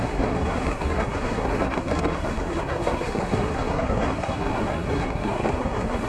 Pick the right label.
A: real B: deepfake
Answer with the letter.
B